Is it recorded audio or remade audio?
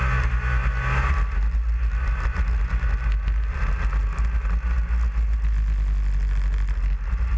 recorded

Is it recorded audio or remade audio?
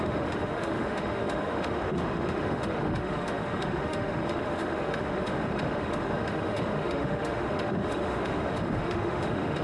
remade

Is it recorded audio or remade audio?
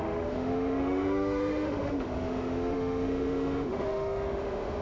remade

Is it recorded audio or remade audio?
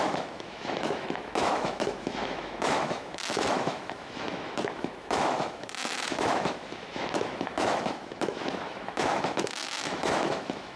remade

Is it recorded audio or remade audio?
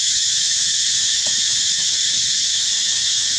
remade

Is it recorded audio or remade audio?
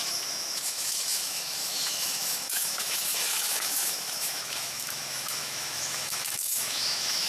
remade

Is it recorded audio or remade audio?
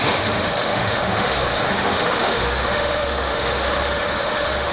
remade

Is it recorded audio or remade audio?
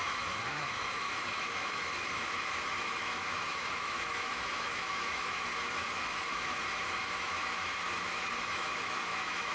remade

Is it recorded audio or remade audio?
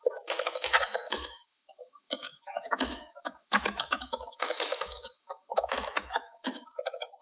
remade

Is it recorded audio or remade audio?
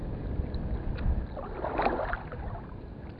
recorded